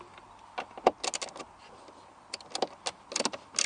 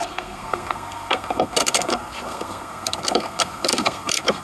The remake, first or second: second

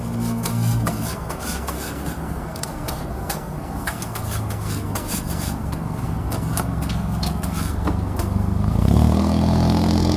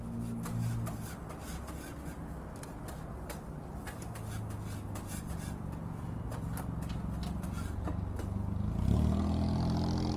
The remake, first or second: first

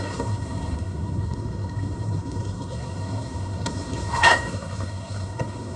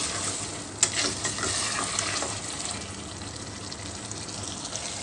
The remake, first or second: first